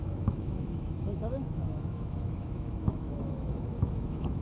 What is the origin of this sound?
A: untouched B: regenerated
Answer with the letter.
B